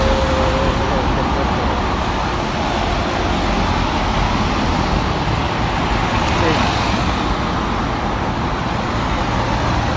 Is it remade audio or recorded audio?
recorded